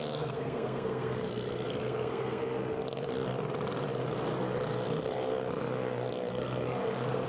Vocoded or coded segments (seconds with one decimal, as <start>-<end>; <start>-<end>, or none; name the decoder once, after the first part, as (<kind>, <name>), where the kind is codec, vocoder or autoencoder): 0.0-2.4 (codec, SNAC); 6.3-7.3